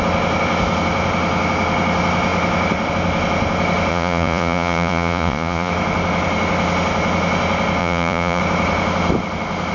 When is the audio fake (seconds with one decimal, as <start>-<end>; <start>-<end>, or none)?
3.9-5.7; 7.8-8.4